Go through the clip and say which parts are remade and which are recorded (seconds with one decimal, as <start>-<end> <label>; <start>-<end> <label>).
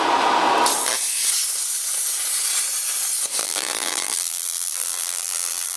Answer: 0.0-3.4 recorded; 3.4-5.8 remade